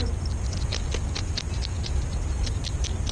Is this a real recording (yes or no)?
yes